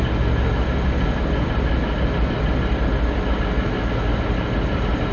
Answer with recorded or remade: recorded